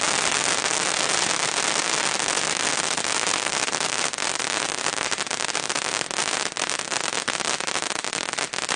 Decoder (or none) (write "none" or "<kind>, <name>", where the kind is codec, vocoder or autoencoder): none